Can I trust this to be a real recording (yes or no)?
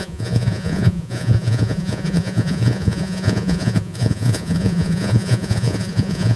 no